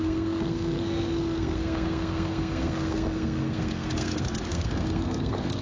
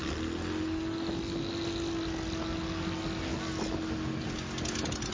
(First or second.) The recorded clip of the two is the second